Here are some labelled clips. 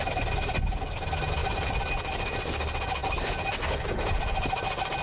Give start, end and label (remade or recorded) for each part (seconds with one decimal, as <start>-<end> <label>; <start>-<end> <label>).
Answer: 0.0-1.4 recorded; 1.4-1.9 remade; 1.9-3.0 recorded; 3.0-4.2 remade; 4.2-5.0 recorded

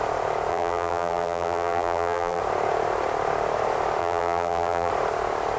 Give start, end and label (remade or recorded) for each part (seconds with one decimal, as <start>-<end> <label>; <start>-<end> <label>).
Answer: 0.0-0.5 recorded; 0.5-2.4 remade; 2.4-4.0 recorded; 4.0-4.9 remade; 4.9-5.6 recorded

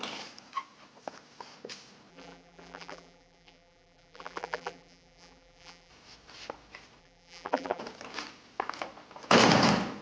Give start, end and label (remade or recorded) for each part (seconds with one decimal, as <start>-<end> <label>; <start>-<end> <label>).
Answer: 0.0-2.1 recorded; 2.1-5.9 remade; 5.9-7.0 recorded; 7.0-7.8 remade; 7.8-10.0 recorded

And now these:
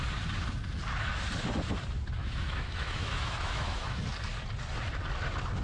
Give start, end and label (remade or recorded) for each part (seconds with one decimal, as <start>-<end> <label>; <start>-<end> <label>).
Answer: 0.0-2.2 recorded; 2.2-4.0 remade; 4.0-5.6 recorded